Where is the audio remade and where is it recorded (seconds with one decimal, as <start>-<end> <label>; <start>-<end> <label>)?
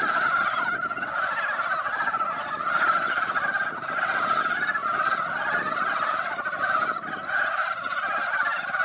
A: 0.0-8.8 recorded